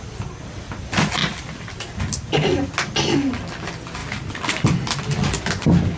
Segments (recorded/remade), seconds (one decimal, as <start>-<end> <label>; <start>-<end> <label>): 0.0-6.0 recorded